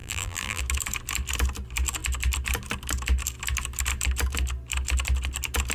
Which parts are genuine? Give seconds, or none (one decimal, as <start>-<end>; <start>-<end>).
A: 0.6-5.7